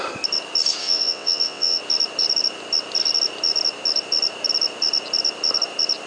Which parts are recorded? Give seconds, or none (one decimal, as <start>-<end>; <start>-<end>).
0.0-0.8; 1.8-6.1